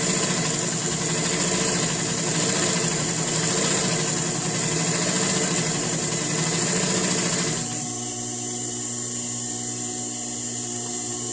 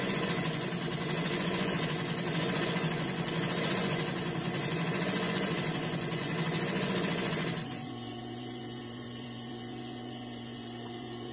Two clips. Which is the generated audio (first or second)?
second